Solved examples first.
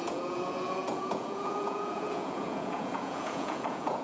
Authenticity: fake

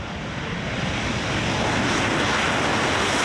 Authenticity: real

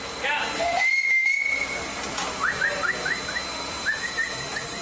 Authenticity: real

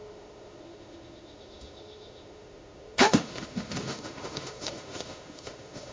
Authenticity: fake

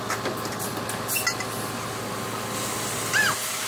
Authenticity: real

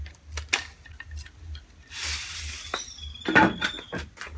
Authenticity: real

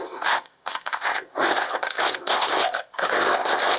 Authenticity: fake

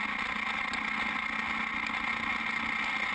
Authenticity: real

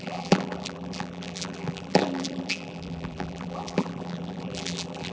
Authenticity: fake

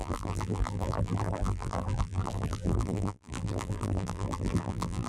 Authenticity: fake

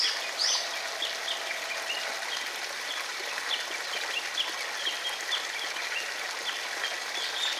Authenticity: real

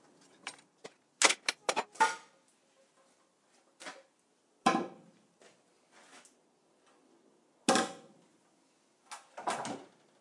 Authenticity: real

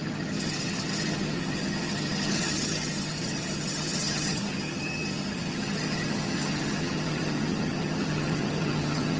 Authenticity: fake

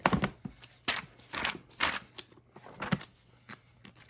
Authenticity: real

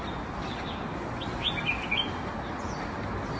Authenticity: real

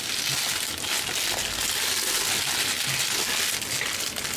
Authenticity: real